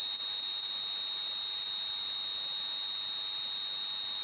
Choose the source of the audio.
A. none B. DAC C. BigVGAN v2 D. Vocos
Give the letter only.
A